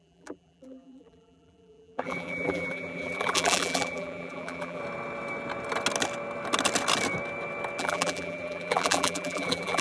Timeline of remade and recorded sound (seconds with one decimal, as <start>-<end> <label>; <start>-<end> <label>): 0.0-4.8 remade; 4.8-7.8 recorded; 7.8-9.8 remade